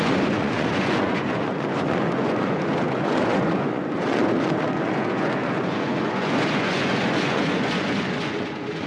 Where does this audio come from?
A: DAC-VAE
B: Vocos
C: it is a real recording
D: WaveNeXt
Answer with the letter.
B